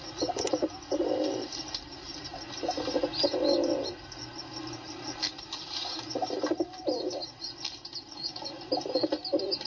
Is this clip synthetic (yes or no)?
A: no